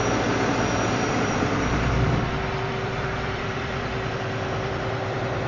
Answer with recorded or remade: remade